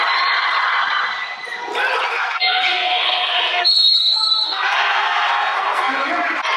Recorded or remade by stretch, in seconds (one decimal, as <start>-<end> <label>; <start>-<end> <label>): 0.0-2.1 recorded; 2.1-6.1 remade; 6.1-6.6 recorded